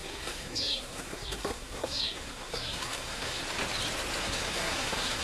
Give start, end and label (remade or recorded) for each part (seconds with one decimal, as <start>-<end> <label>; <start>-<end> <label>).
0.0-3.4 remade; 3.4-4.2 recorded; 4.2-5.2 remade